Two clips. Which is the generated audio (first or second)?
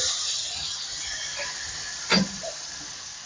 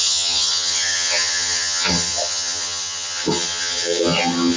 second